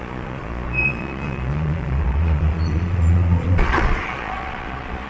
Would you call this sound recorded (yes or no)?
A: no